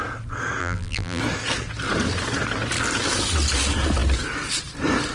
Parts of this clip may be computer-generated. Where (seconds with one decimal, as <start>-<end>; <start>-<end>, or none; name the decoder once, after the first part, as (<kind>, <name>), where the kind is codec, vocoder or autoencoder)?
0.6-1.2 (vocoder, BigVGAN v2)